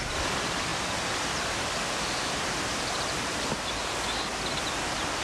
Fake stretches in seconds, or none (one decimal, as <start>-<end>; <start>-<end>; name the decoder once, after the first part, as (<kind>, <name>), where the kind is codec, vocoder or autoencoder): 0.0-3.8 (vocoder, BigVGAN v2)